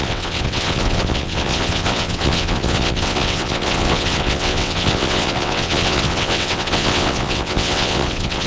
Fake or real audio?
fake